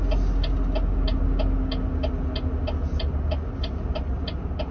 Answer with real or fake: real